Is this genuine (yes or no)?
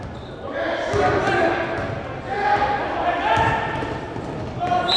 yes